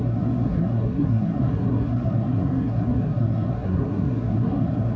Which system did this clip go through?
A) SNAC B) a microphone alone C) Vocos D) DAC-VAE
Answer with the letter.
A